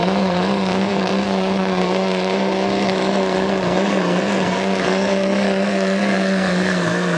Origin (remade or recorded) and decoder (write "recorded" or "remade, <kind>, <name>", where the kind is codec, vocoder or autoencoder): remade, codec, SNAC